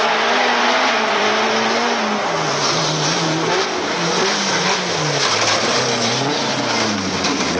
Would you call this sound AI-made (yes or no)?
no